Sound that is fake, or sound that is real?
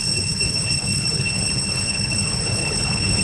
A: fake